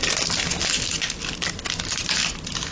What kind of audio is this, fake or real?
real